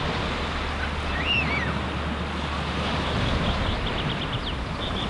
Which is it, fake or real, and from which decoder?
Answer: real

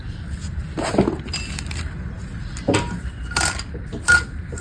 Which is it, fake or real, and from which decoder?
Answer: real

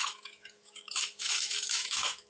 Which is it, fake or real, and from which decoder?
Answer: fake, autoencoder, DAC-VAE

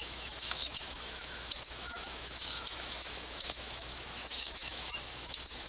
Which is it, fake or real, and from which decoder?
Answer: fake, autoencoder, DAC-VAE